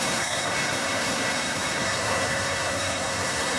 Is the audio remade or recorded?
remade